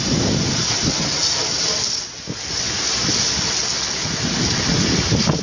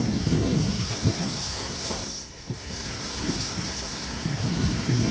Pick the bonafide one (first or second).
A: first